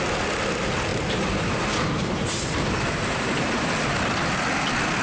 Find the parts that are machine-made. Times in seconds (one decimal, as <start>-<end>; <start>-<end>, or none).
0.9-3.9